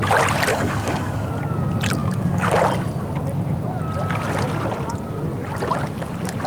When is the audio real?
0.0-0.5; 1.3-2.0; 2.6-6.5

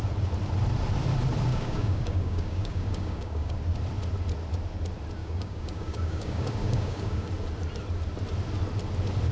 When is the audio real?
0.0-1.5; 3.6-5.2; 7.3-9.3

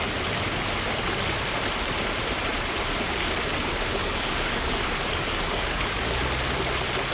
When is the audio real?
0.0-4.0; 6.2-7.1

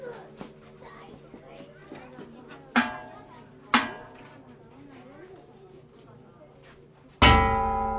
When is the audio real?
0.0-8.0